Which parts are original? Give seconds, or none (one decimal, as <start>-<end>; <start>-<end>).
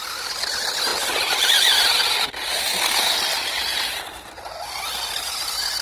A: 0.0-5.8